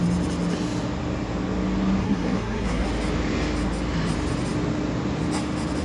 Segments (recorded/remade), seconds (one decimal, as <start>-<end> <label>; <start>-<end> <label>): 0.0-2.0 recorded; 2.0-2.9 remade; 2.9-5.8 recorded